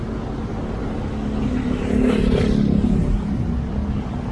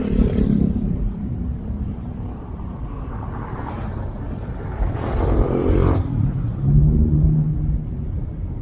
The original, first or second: first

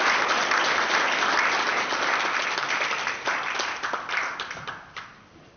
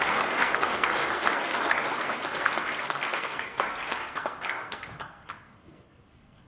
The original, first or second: first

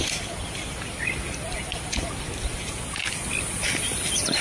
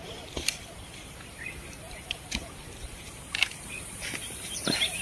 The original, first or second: first